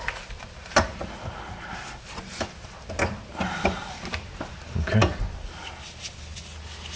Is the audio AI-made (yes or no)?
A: no